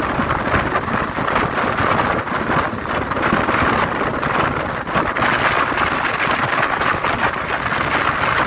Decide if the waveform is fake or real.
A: real